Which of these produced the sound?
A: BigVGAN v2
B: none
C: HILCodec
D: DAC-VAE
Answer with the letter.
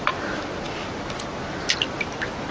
B